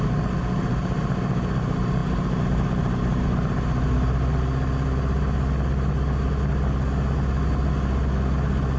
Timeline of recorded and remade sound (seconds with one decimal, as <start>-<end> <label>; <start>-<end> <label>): 0.0-8.8 recorded